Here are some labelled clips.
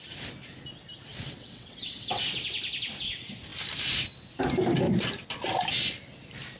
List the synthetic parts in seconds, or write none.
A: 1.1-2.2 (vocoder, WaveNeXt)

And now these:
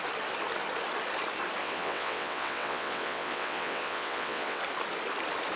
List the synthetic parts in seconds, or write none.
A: 1.6-4.6 (vocoder, WaveNeXt)

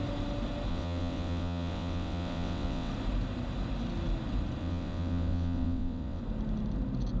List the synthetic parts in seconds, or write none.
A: 0.7-2.9 (vocoder, WaveNeXt); 4.6-6.2